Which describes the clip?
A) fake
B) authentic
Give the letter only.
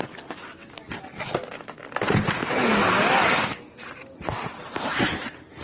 B